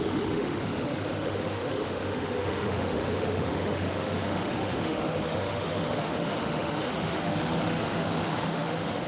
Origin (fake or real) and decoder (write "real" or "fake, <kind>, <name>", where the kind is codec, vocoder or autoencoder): fake, autoencoder, DAC-VAE